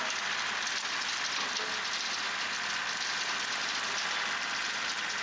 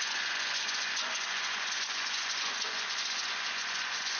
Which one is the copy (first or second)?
second